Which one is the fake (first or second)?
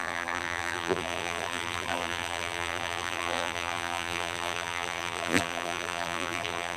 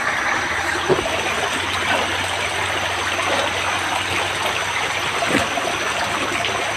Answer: first